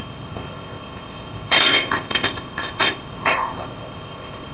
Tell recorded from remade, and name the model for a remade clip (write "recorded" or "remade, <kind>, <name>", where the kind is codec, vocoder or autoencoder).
remade, codec, ZipCodec